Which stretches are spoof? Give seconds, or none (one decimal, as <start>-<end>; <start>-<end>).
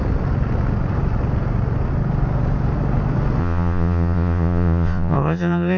3.4-5.8